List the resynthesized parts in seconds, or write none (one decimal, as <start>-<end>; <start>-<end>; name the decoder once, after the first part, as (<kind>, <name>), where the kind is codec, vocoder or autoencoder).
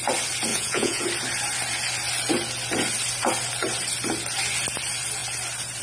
0.5-1.0 (vocoder, Vocos)